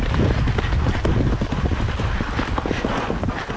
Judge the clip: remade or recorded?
recorded